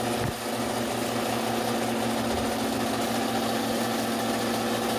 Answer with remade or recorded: recorded